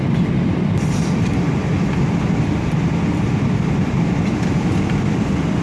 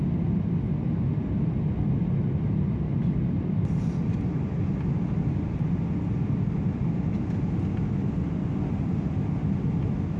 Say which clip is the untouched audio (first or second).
second